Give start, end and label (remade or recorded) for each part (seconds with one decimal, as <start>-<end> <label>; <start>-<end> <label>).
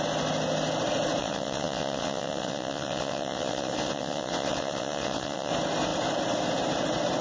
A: 0.0-1.2 recorded; 1.2-5.5 remade; 5.5-7.2 recorded